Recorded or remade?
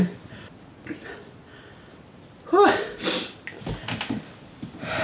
recorded